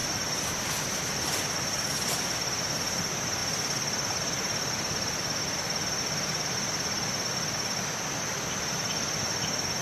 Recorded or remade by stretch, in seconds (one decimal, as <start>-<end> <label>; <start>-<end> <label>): 0.0-9.8 recorded